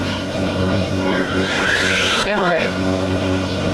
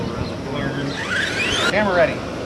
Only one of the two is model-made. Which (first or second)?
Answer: first